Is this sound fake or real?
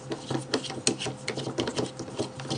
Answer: real